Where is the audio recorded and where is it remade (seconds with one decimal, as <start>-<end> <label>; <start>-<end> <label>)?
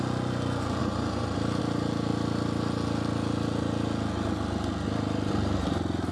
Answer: 0.0-0.8 recorded; 0.8-1.6 remade; 1.6-6.1 recorded